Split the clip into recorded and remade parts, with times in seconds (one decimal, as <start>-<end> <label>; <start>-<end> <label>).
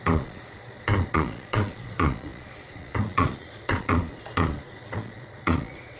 0.0-6.0 remade